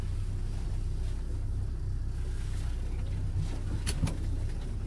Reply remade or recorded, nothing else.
recorded